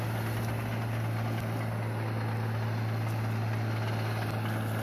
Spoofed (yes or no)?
no